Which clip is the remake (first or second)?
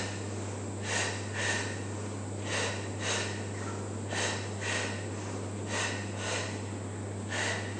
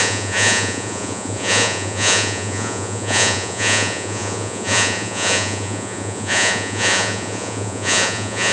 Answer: second